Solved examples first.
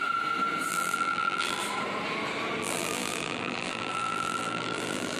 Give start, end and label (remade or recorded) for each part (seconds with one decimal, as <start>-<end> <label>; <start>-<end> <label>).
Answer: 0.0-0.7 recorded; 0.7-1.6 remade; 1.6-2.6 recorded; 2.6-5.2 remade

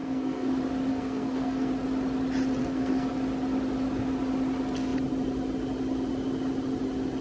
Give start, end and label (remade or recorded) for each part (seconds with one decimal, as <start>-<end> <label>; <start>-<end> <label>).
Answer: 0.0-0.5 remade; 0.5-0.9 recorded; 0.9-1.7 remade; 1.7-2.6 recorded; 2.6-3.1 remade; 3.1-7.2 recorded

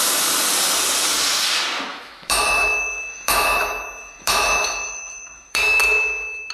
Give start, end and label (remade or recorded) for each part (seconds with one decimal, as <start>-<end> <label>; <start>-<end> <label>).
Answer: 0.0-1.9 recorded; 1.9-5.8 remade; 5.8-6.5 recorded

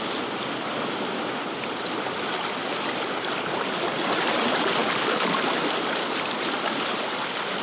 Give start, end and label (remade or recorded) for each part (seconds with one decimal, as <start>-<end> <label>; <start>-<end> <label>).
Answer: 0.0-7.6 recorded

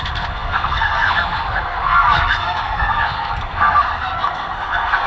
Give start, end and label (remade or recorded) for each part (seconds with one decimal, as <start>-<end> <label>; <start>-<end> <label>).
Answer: 0.0-5.1 remade

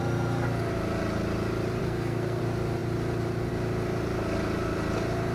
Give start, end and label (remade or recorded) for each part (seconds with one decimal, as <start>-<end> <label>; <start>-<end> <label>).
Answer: 0.0-1.8 recorded; 1.8-2.4 remade; 2.4-5.3 recorded

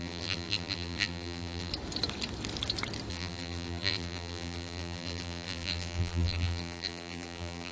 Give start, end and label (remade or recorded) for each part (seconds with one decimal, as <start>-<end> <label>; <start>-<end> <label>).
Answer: 0.0-1.7 remade; 1.7-3.1 recorded; 3.1-7.7 remade

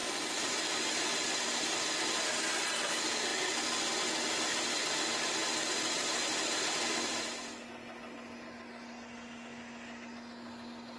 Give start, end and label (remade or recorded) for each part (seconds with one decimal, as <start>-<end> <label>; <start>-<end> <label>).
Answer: 0.0-11.0 recorded